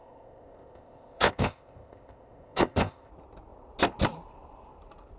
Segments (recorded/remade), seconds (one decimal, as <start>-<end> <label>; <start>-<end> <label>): 0.0-3.1 remade; 3.1-5.2 recorded